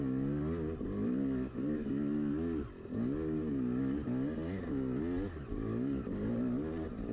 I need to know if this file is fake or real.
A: real